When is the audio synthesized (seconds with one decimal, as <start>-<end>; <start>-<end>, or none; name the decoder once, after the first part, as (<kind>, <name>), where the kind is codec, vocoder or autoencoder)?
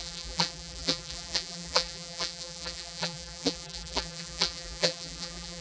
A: 0.0-5.6 (vocoder, BigVGAN v2)